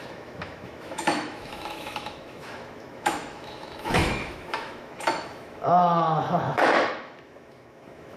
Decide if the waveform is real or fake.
fake